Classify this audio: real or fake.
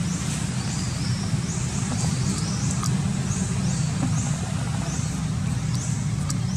real